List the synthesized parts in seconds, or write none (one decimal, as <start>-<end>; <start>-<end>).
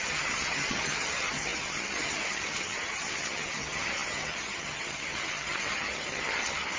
0.0-6.8